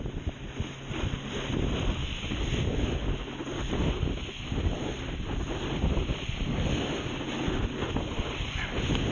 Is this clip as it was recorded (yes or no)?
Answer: yes